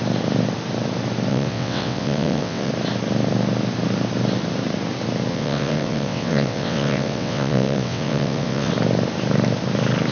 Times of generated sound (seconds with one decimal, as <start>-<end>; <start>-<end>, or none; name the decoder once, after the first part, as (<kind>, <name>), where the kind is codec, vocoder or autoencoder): 1.3-2.7 (vocoder, WaveNeXt); 5.3-8.7